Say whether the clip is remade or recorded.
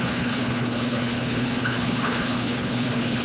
remade